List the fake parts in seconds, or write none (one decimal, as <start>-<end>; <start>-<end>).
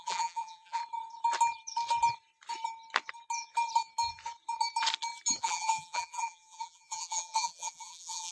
0.0-0.8; 5.4-8.3